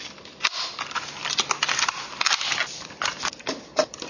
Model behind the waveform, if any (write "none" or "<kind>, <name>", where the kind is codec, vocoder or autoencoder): none